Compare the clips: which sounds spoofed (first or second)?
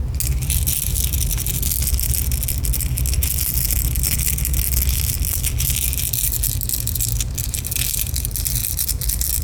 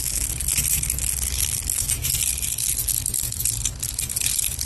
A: second